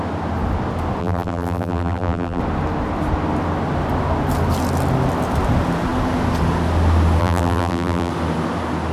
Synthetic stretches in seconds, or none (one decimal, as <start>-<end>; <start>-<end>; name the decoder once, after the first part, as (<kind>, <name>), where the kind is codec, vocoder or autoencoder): 1.0-2.4 (vocoder, BigVGAN v2); 7.2-8.1